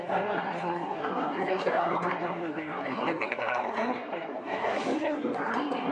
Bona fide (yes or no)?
no